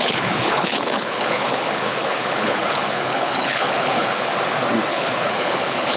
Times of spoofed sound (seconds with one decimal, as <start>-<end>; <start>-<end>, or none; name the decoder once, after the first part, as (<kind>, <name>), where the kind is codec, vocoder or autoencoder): 0.0-4.3 (codec, HILCodec); 4.9-6.0